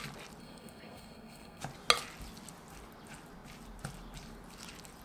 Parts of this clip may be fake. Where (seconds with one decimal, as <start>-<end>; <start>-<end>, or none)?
0.4-1.6